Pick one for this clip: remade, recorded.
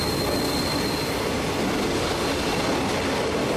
recorded